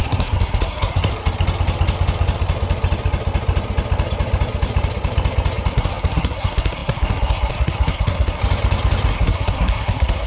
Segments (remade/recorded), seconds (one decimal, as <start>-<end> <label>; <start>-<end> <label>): 0.0-1.1 remade; 1.1-5.7 recorded; 5.7-8.4 remade; 8.4-9.1 recorded; 9.1-10.3 remade